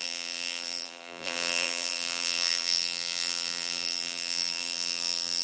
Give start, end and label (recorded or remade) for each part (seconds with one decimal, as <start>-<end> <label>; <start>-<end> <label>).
0.0-5.4 remade